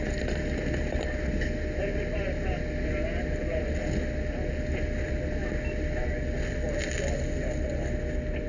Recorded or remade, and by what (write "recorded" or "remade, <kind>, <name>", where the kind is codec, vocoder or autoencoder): recorded